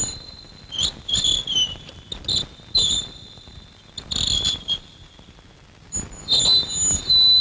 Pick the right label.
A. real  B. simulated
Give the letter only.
A